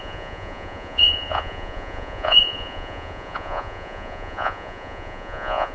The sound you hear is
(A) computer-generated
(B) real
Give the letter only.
A